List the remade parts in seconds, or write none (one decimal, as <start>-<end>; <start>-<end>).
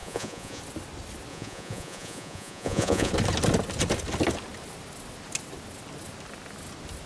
0.0-0.6; 1.3-3.1